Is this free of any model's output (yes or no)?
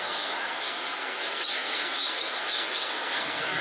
no